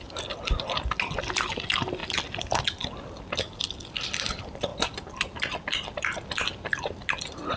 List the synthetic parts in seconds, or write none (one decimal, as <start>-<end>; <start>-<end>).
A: none